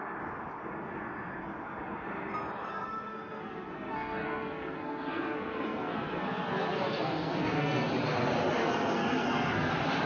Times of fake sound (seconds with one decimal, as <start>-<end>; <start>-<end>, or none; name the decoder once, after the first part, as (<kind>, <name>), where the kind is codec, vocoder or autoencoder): 2.7-7.9 (codec, SNAC); 8.6-9.7